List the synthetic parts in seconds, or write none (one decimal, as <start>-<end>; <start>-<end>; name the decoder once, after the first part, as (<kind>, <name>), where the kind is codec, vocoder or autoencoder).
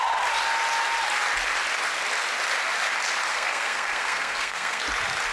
3.3-4.8 (codec, SNAC)